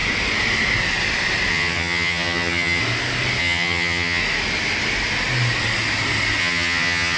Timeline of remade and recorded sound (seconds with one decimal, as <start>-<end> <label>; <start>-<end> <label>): 0.0-1.5 recorded; 1.5-2.8 remade; 2.8-3.4 recorded; 3.4-4.2 remade; 4.2-6.4 recorded; 6.4-7.2 remade